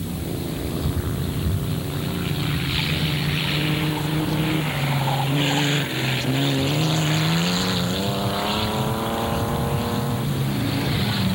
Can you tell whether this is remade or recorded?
recorded